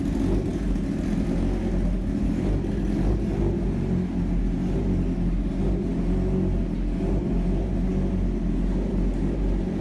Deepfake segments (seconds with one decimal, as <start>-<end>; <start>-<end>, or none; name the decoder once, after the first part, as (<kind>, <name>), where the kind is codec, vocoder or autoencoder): none